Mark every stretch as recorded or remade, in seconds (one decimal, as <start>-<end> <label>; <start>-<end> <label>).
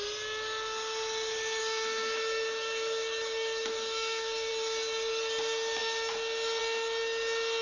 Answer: 0.0-1.6 recorded; 1.6-4.5 remade; 4.5-7.6 recorded